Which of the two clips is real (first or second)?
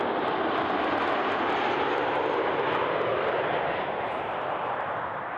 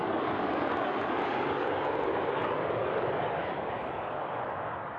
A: first